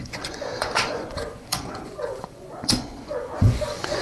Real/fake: fake